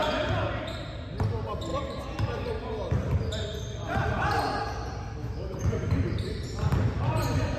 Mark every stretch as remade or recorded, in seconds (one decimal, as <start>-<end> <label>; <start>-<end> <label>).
0.0-5.2 recorded; 5.2-5.9 remade; 5.9-7.6 recorded